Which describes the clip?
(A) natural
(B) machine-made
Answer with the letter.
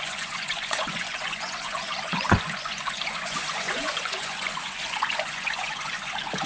B